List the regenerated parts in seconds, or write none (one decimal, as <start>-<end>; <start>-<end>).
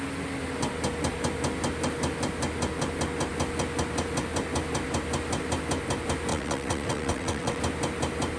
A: 6.3-7.6